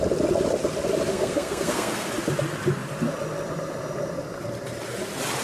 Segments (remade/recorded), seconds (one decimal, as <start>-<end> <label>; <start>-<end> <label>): 0.0-1.1 recorded; 1.1-2.1 remade; 2.1-5.4 recorded